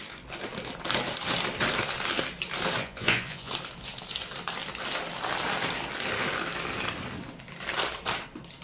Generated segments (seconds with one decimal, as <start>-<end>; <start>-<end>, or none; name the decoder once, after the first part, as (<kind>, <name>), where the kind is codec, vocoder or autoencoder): 2.8-3.5 (vocoder, Vocos)